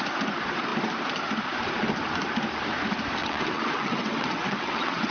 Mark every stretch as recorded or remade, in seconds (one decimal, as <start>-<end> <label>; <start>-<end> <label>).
0.0-3.2 recorded; 3.2-5.1 remade